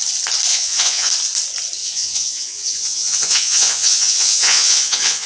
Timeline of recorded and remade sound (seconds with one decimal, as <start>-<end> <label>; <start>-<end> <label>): 0.0-0.5 recorded; 0.5-1.1 remade; 1.1-1.8 recorded; 1.8-5.3 remade